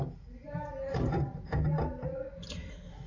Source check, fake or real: real